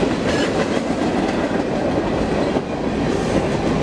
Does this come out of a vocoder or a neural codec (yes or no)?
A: no